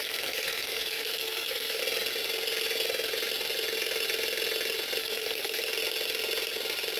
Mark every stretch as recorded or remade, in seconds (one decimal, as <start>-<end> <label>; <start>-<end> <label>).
0.0-1.8 remade; 1.8-5.0 recorded; 5.0-5.6 remade; 5.6-7.0 recorded